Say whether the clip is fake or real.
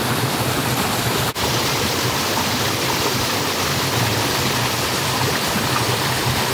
real